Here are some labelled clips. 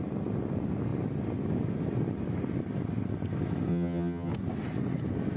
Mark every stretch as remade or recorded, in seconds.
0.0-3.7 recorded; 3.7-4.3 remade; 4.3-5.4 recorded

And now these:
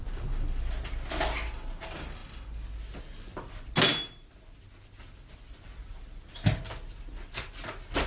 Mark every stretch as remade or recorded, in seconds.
0.0-8.1 recorded

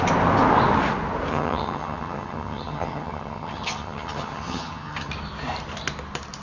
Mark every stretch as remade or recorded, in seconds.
0.0-1.3 recorded; 1.3-5.1 remade; 5.1-6.4 recorded

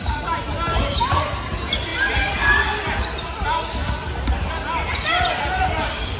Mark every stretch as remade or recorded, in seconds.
0.0-6.2 recorded

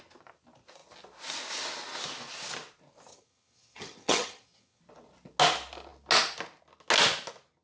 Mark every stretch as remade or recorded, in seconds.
0.0-3.1 recorded; 3.1-4.8 remade; 4.8-7.6 recorded

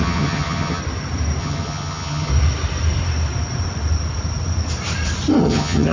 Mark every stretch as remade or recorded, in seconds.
0.0-0.8 remade; 0.8-1.4 recorded; 1.4-2.3 remade; 2.3-5.4 recorded; 5.4-5.9 remade

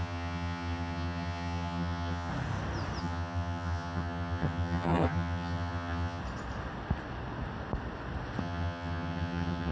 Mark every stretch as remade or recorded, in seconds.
0.0-2.3 remade; 2.3-3.0 recorded; 3.0-6.2 remade; 6.2-8.4 recorded; 8.4-9.7 remade

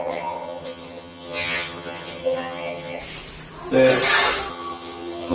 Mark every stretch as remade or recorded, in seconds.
0.0-3.0 remade; 3.0-4.5 recorded; 4.5-5.3 remade